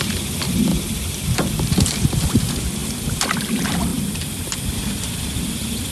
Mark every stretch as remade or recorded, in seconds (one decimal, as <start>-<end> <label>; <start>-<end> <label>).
0.0-0.7 recorded; 0.7-2.4 remade; 2.4-3.9 recorded; 3.9-5.2 remade; 5.2-5.9 recorded